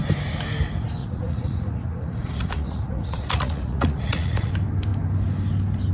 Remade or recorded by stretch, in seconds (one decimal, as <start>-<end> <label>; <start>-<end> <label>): 0.0-1.0 recorded; 1.0-4.5 remade; 4.5-5.9 recorded